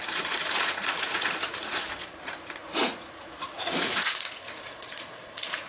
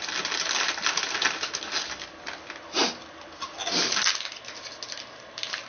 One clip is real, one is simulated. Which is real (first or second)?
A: second